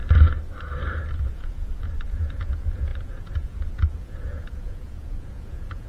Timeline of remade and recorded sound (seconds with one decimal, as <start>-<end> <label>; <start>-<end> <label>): 0.0-1.3 recorded; 1.3-5.9 remade